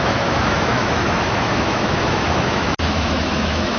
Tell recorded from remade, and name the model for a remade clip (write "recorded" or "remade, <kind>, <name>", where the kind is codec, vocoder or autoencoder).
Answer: remade, autoencoder, DAC-VAE